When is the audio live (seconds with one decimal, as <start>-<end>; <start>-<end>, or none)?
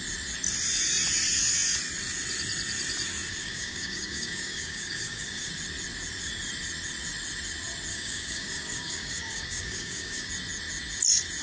0.0-3.4; 5.5-7.9; 10.3-11.4